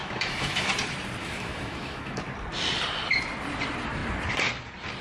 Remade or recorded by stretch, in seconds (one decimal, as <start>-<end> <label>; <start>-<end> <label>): 0.0-0.7 remade; 0.7-1.2 recorded; 1.2-2.2 remade; 2.2-5.0 recorded